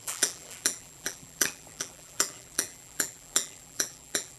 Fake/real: fake